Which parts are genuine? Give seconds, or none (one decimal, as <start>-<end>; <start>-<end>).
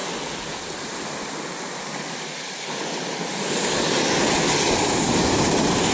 0.0-5.9